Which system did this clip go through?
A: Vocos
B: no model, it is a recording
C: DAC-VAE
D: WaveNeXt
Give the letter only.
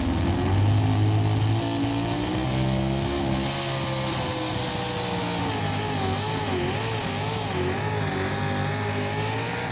B